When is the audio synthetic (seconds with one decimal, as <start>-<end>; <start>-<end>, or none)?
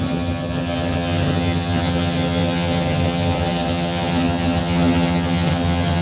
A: 0.0-6.0